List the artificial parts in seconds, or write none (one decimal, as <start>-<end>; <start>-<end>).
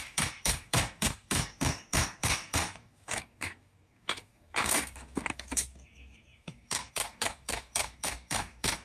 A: 0.0-8.8